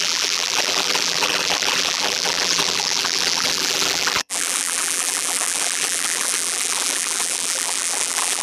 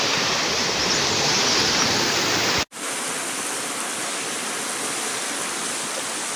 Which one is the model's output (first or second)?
first